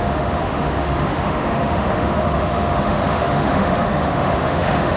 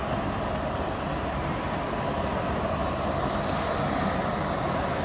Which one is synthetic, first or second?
first